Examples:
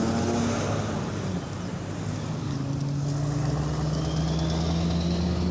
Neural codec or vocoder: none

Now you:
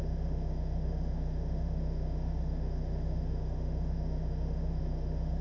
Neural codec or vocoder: autoencoder, DAC-VAE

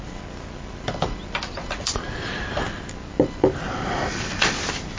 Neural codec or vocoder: none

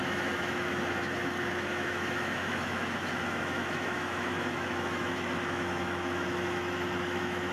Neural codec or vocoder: autoencoder, DAC-VAE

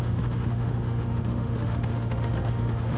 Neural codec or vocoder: autoencoder, DAC-VAE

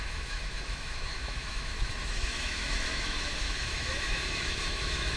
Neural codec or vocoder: autoencoder, DAC-VAE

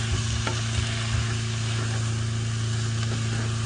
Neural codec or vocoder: none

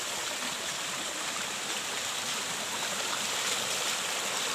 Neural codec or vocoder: none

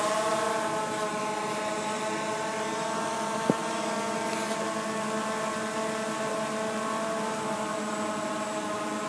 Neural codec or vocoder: none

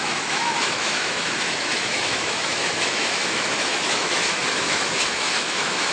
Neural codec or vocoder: autoencoder, DAC-VAE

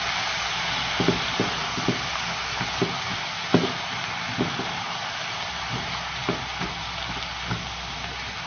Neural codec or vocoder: none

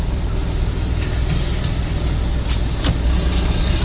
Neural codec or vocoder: none